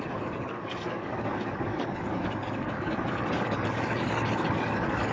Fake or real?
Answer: fake